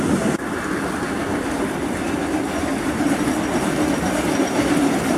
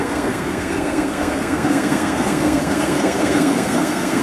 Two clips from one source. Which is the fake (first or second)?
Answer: second